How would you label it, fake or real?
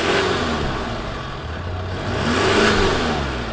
real